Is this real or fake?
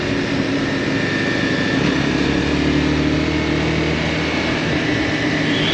real